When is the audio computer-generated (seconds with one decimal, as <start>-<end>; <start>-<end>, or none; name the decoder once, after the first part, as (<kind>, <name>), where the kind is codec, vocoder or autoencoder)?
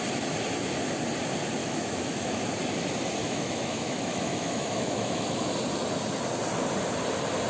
1.6-2.4 (autoencoder, DAC-VAE); 3.2-5.5